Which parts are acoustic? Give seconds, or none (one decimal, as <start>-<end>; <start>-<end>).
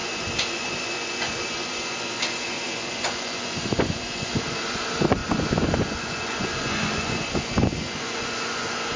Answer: none